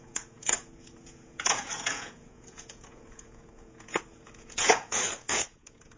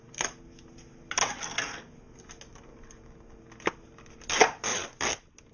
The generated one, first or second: first